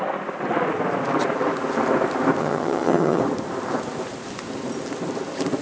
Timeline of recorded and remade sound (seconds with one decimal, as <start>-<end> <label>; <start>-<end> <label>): 0.0-2.4 recorded; 2.4-3.2 remade; 3.2-5.6 recorded